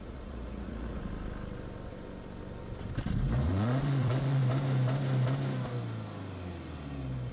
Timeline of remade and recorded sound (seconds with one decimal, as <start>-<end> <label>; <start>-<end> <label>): 0.0-1.0 remade; 1.0-3.5 recorded; 3.5-4.4 remade; 4.4-7.3 recorded